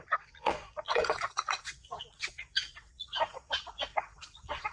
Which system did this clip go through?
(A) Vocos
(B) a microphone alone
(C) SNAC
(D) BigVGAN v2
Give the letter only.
A